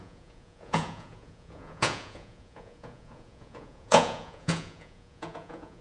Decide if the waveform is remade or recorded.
remade